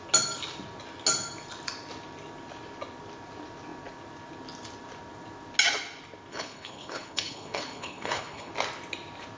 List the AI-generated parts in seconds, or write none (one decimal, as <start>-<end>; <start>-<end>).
6.3-8.5